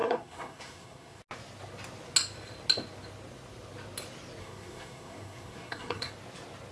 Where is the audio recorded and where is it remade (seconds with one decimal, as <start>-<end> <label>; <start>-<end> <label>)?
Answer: 0.0-1.2 remade; 1.2-4.4 recorded; 4.4-6.1 remade; 6.1-6.7 recorded